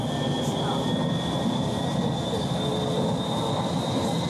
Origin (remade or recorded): recorded